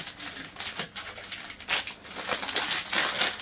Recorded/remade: recorded